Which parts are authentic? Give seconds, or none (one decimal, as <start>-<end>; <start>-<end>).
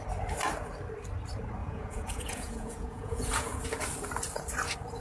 0.0-1.6; 3.6-5.0